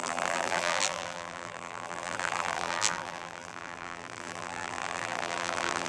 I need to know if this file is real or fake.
fake